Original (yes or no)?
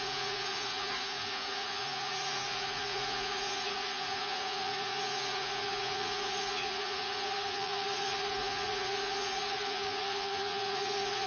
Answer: no